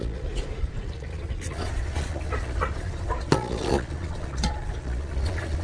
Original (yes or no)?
no